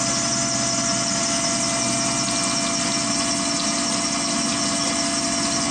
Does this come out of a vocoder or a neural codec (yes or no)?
no